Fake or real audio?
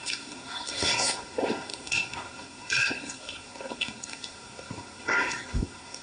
fake